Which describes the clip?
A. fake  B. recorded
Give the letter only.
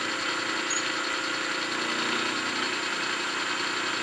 B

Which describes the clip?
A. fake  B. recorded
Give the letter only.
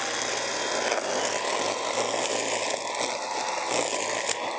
B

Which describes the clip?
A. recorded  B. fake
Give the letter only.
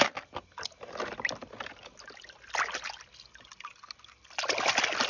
A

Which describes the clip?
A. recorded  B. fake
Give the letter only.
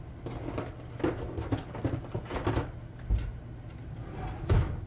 A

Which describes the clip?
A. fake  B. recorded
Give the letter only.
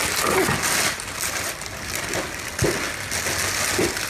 B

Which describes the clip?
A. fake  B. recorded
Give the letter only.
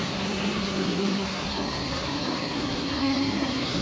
A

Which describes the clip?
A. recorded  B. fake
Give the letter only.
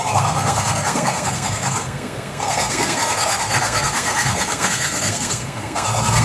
B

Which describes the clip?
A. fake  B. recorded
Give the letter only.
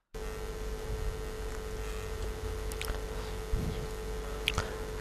B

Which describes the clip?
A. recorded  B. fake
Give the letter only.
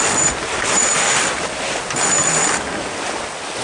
A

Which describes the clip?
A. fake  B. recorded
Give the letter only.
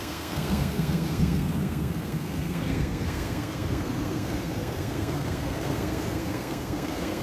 A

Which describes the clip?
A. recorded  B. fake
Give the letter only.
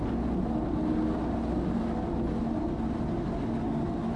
A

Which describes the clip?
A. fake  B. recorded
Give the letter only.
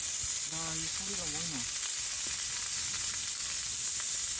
B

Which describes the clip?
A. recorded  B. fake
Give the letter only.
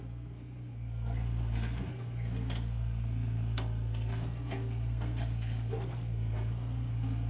B